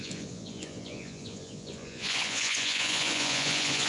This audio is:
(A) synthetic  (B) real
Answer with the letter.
A